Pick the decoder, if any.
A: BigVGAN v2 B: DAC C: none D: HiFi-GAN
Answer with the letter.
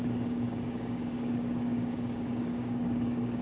B